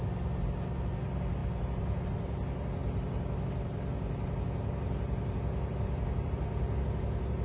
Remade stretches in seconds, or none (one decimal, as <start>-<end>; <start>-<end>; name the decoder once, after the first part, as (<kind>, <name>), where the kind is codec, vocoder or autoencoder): none

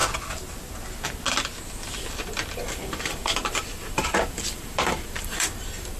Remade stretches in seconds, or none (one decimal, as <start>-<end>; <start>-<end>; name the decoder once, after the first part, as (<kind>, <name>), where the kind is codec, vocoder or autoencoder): 2.1-6.0 (vocoder, BigVGAN v2)

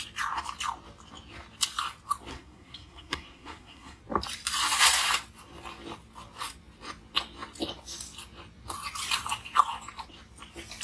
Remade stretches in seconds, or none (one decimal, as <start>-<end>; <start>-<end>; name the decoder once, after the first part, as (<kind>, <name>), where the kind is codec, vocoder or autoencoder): 2.3-4.0 (codec, SNAC)

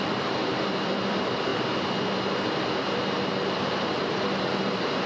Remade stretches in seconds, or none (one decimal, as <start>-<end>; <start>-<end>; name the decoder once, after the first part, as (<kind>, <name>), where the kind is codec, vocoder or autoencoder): 0.0-1.5 (vocoder, BigVGAN v2); 3.9-5.1

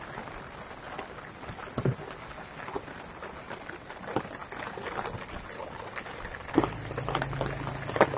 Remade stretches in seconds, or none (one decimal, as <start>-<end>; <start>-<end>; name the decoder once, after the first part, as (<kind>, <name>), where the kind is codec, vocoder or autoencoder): none

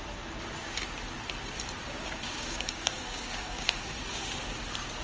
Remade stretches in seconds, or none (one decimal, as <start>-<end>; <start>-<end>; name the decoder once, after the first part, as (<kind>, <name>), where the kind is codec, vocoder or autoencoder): 2.0-4.0 (codec, DAC)

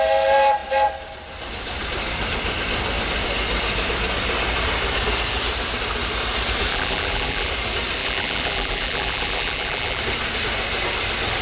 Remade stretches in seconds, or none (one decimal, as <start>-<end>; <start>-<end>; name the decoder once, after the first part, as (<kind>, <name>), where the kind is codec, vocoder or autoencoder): 6.7-7.5 (vocoder, BigVGAN v2); 8.0-10.0

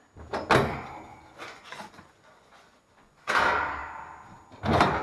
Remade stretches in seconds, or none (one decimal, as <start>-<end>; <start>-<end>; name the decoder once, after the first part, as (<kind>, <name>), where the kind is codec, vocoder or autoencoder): 1.1-3.3 (vocoder, Vocos)